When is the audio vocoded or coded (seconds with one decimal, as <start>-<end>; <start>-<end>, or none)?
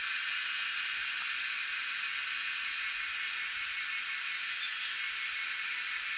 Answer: none